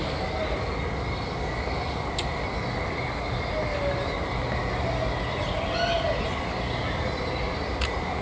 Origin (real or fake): real